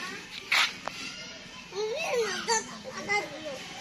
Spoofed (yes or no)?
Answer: no